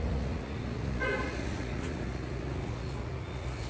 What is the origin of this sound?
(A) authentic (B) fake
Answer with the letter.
B